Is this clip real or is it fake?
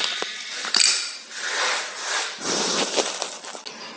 real